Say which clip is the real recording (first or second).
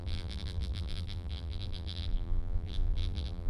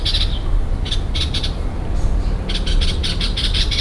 second